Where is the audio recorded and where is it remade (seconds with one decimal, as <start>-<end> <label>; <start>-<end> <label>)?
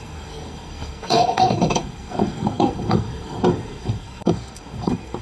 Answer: 0.0-5.2 remade